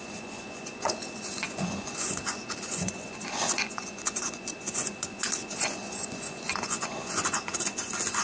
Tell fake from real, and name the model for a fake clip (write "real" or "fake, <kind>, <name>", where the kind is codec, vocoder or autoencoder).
fake, vocoder, Vocos